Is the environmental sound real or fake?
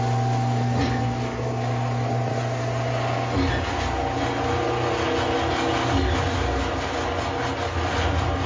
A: real